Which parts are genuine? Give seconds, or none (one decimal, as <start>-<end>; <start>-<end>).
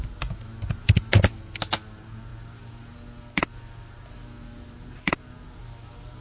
0.0-6.2